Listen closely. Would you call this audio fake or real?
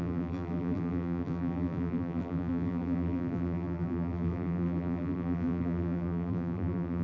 fake